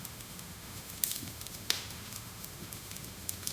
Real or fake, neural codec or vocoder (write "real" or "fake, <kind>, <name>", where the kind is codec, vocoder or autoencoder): fake, autoencoder, DAC-VAE